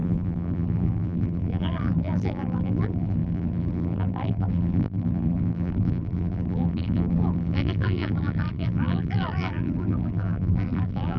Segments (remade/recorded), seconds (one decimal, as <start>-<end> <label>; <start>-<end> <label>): 0.0-11.2 remade